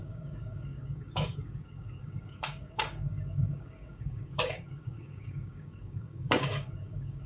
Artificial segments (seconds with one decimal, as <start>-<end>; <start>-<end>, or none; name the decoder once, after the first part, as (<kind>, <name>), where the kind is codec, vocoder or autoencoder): 0.0-7.3 (codec, DAC)